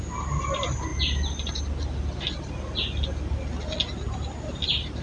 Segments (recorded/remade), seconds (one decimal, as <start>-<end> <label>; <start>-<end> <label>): 0.0-5.0 recorded